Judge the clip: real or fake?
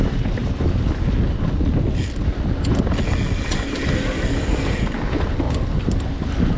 real